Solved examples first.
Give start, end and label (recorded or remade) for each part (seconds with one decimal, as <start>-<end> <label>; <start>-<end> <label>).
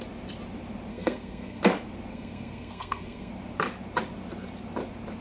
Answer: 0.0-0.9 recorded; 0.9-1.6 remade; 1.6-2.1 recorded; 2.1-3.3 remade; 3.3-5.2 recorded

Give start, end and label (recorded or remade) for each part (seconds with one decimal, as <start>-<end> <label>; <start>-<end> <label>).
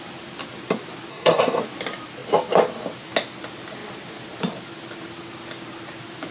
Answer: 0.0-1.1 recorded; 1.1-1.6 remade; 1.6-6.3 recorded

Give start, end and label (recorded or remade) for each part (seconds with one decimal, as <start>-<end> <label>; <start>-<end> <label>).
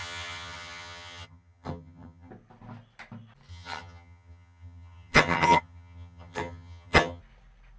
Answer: 0.0-2.3 remade; 2.3-3.5 recorded; 3.5-7.2 remade; 7.2-7.8 recorded